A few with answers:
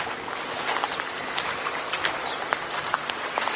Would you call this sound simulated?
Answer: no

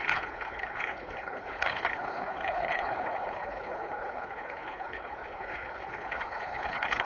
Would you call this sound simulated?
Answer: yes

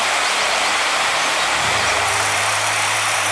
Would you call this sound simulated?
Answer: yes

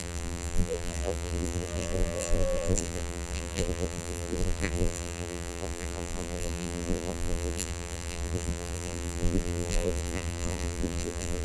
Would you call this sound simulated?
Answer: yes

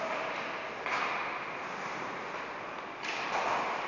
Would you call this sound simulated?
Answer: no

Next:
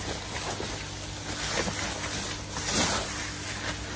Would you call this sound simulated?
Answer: no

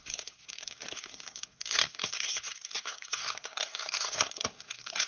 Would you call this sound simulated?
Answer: yes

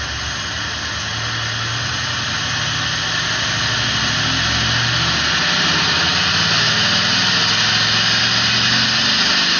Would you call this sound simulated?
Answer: no